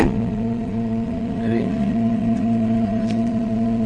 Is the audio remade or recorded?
remade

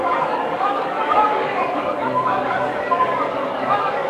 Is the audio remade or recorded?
remade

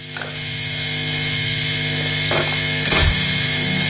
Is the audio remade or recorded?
remade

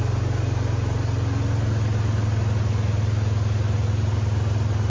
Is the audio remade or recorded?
recorded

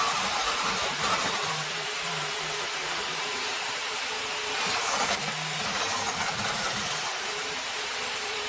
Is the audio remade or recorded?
remade